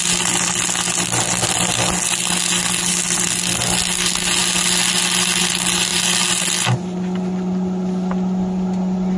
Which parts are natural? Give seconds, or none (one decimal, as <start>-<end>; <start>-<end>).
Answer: 0.0-9.2